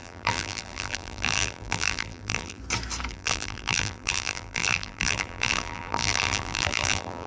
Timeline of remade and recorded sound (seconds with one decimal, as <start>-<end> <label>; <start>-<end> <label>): 0.0-2.6 remade; 2.6-3.1 recorded; 3.1-7.3 remade